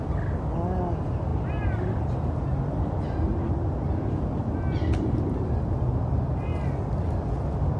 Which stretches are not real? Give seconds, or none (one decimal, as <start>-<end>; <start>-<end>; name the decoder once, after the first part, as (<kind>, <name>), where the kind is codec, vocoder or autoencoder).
0.0-7.8 (vocoder, BigVGAN v2)